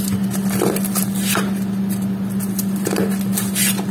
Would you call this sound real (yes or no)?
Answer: yes